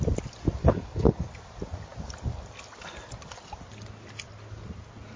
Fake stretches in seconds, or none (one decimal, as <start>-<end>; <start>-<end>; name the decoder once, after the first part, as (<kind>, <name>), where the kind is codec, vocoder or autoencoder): 0.6-1.3 (codec, HILCodec)